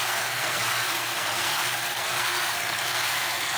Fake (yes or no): yes